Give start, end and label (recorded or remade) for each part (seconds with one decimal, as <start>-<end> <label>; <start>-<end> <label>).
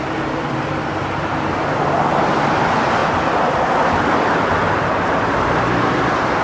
0.0-6.4 recorded